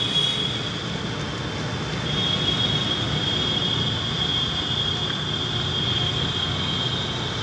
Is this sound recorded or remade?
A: recorded